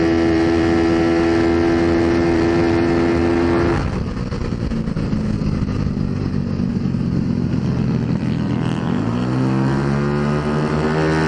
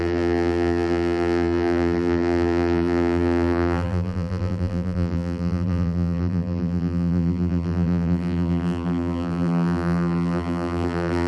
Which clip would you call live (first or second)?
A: first